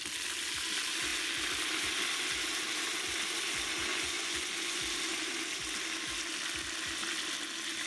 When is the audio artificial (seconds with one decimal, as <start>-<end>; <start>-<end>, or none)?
3.9-4.8